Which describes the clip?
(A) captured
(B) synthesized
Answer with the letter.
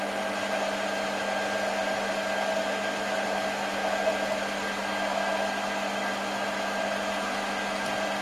A